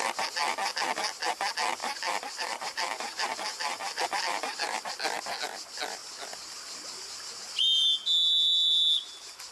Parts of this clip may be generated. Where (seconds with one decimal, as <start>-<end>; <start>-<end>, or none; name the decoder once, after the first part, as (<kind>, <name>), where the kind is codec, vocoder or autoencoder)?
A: 1.8-4.9 (vocoder, BigVGAN v2)